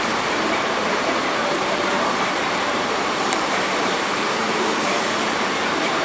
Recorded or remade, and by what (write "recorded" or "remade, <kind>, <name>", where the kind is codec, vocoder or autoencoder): remade, vocoder, BigVGAN v2